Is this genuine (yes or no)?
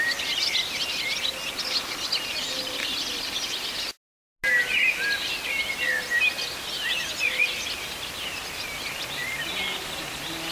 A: yes